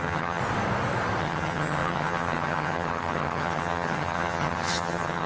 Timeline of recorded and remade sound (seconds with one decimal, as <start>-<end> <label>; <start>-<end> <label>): 0.0-0.4 remade; 0.4-1.2 recorded; 1.2-5.3 remade